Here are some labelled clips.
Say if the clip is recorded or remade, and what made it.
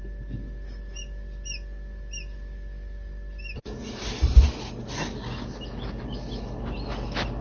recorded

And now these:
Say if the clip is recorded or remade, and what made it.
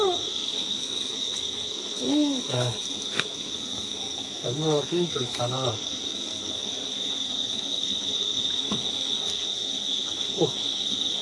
remade, codec, SNAC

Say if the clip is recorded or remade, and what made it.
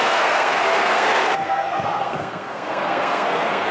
remade, codec, SNAC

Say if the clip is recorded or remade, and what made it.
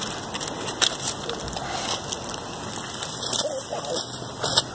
recorded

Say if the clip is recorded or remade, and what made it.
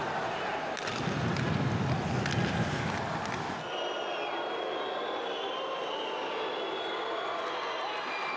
recorded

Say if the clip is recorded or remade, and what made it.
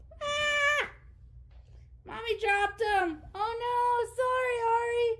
recorded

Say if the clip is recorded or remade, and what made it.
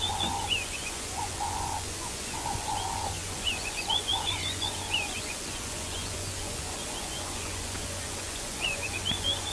remade, vocoder, Vocos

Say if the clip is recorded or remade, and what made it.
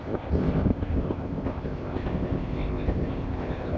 remade, codec, ZipCodec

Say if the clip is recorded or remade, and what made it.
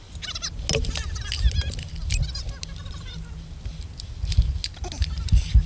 recorded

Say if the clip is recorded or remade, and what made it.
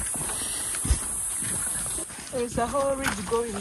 recorded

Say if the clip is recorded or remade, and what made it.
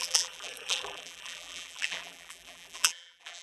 remade, vocoder, BigVGAN v2